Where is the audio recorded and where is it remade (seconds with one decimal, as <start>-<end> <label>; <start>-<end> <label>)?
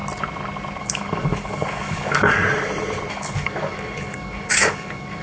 0.0-0.8 recorded; 0.8-2.4 remade; 2.4-3.1 recorded; 3.1-5.2 remade